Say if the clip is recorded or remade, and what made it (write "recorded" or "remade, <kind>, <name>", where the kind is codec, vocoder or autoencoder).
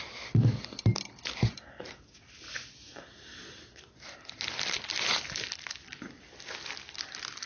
recorded